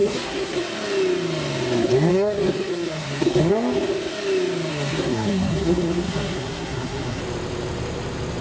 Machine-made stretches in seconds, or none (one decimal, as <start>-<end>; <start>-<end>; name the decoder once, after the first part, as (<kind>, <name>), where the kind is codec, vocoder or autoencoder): 0.0-0.6 (codec, SNAC); 2.1-3.5; 4.7-7.2